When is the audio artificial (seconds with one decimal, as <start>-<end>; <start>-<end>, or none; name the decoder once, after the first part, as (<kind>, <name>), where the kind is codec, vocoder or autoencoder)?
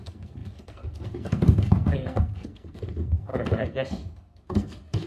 0.0-5.1 (codec, SNAC)